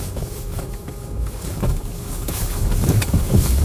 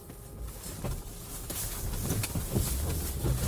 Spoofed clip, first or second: first